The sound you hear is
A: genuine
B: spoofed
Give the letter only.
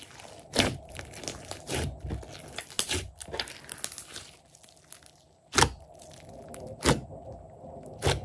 A